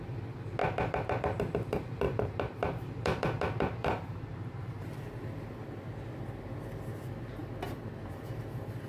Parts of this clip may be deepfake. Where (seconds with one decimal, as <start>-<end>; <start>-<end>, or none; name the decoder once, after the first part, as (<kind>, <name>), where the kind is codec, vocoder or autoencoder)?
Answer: 0.6-5.0 (vocoder, BigVGAN v2)

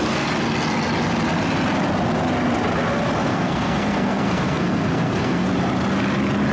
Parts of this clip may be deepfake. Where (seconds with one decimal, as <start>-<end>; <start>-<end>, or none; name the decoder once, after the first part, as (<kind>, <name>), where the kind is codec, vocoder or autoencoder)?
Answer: 3.3-5.5 (codec, SNAC)